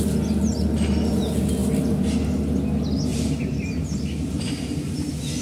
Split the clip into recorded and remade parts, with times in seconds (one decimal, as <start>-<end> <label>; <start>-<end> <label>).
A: 0.0-3.1 recorded; 3.1-4.6 remade; 4.6-5.4 recorded